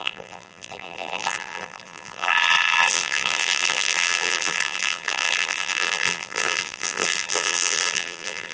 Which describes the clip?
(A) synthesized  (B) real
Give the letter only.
A